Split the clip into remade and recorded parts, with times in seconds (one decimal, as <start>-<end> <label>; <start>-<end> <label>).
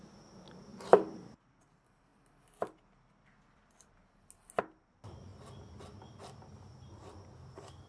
0.0-0.7 recorded; 0.7-1.5 remade; 1.5-7.9 recorded